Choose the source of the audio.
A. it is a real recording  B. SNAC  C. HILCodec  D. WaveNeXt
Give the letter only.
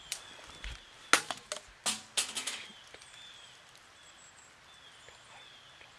A